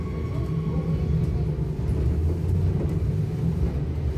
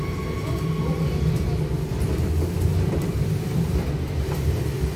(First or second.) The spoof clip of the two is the second